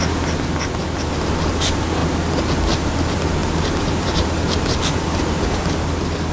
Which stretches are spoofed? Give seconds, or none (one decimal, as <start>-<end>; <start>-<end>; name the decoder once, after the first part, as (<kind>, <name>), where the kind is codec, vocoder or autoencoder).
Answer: 3.4-5.4 (vocoder, BigVGAN v2)